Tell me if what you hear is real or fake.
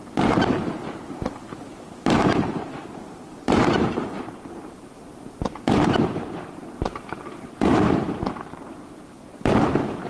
fake